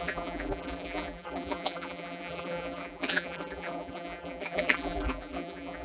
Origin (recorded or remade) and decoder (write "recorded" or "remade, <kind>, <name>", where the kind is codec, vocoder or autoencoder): remade, vocoder, BigVGAN v2